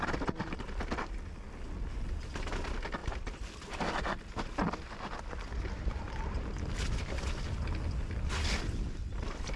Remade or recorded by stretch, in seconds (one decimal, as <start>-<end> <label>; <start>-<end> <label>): 0.0-9.6 recorded